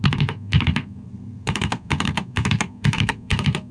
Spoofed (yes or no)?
yes